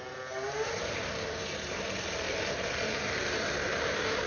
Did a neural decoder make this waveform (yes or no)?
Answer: yes